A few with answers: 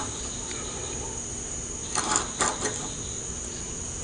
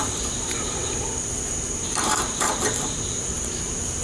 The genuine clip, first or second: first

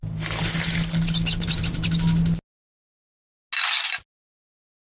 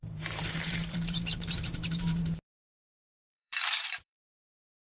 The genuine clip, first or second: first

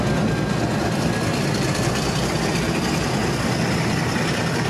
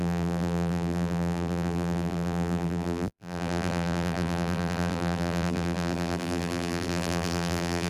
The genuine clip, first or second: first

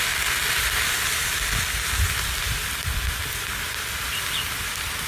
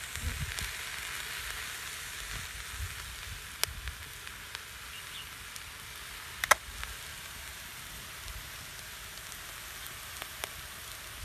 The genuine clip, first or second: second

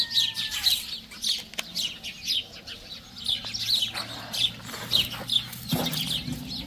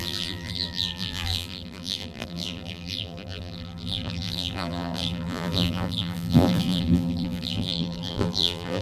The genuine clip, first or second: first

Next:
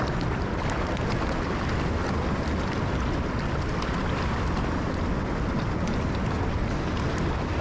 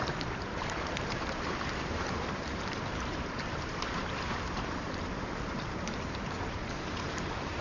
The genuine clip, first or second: first